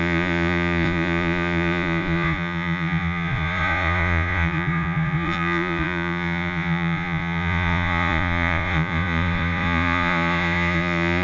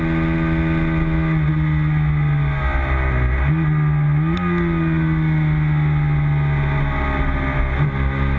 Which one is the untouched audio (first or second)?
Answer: second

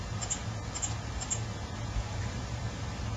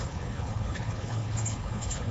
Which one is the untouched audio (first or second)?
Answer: first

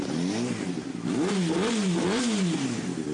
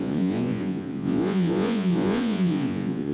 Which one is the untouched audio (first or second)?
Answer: first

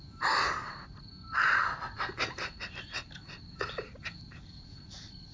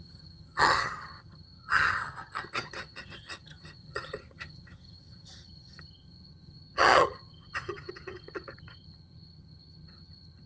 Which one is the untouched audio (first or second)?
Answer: first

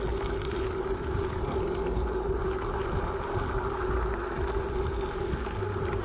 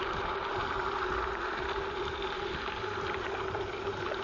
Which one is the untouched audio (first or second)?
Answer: first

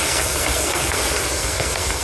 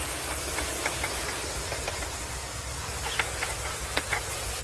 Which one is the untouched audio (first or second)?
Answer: second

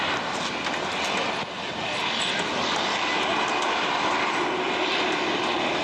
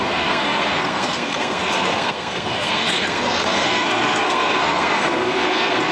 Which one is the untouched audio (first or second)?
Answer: first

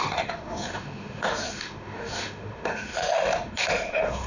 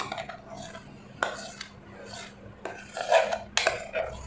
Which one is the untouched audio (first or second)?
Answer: second